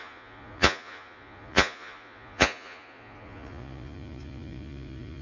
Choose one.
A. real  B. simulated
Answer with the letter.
B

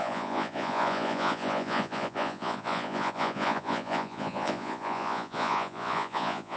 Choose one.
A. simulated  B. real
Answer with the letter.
A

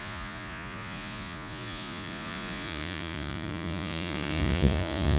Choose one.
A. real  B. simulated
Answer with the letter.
B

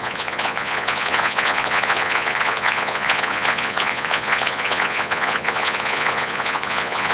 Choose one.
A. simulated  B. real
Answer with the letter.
A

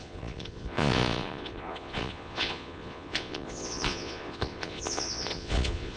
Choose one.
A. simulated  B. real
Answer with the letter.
A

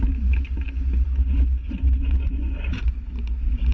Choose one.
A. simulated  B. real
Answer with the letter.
B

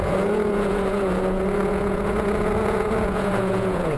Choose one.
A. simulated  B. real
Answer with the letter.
A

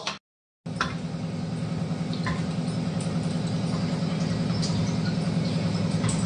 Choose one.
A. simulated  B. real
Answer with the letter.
B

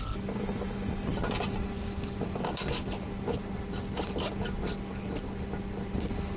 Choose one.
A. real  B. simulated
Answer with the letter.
A